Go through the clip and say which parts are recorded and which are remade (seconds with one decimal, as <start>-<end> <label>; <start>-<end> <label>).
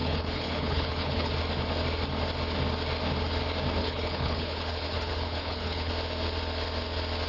0.0-1.3 remade; 1.3-3.8 recorded; 3.8-5.9 remade; 5.9-7.3 recorded